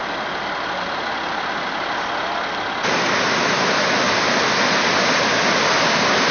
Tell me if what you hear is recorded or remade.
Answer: recorded